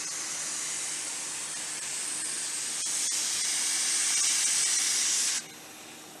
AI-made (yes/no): no